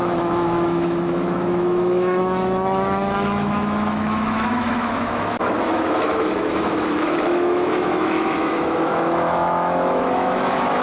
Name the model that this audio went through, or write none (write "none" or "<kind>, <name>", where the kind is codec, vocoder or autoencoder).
autoencoder, DAC-VAE